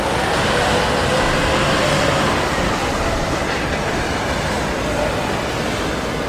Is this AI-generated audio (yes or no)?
no